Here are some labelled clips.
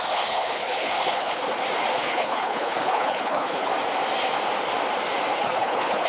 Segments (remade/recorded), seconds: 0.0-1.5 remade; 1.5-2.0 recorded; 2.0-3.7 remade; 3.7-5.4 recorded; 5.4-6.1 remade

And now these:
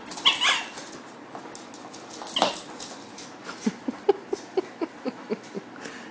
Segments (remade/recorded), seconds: 0.0-4.5 recorded; 4.5-5.5 remade; 5.5-6.1 recorded

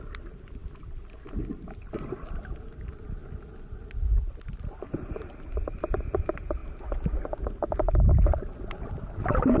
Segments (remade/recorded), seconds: 0.0-9.6 recorded

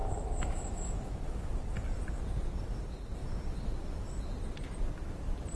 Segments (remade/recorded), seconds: 0.0-1.5 remade; 1.5-5.6 recorded

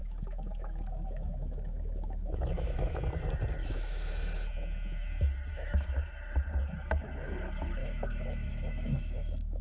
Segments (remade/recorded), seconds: 0.0-3.0 remade; 3.0-3.6 recorded; 3.6-4.1 remade; 4.1-5.5 recorded; 5.5-6.1 remade; 6.1-7.8 recorded; 7.8-9.6 remade

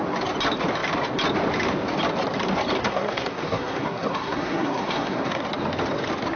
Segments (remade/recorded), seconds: 0.0-2.8 recorded; 2.8-5.4 remade; 5.4-6.4 recorded

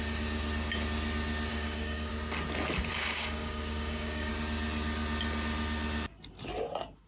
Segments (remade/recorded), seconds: 0.0-1.5 recorded; 1.5-2.1 remade; 2.1-2.9 recorded; 2.9-4.3 remade; 4.3-7.1 recorded